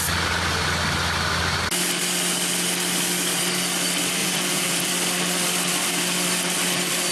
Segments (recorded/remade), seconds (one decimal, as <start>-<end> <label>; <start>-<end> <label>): 0.0-4.2 recorded; 4.2-4.9 remade; 4.9-7.1 recorded